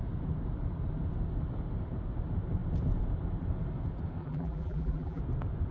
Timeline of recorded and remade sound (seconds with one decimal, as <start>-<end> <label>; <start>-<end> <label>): 0.0-4.2 recorded; 4.2-5.2 remade; 5.2-5.7 recorded